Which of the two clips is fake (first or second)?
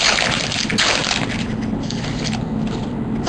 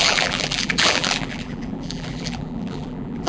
second